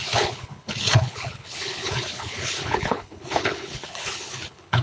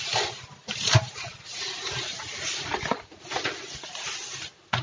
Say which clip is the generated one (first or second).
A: first